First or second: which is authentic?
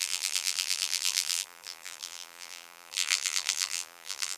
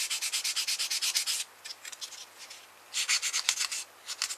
second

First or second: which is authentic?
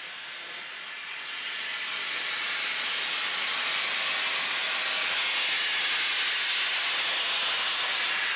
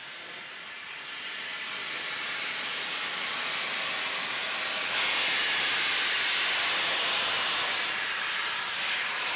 first